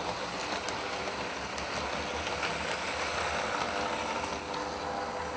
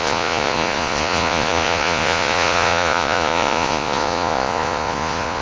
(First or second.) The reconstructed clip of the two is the second